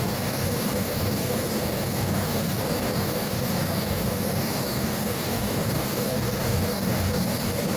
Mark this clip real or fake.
fake